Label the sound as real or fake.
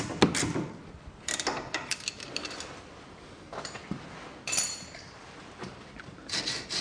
fake